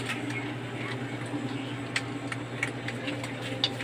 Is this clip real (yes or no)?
yes